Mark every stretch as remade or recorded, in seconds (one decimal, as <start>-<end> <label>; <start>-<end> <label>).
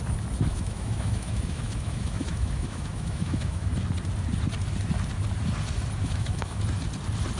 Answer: 0.0-0.5 recorded; 0.5-3.7 remade; 3.7-6.0 recorded; 6.0-6.6 remade; 6.6-7.4 recorded